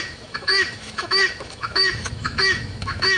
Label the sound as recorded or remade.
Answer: remade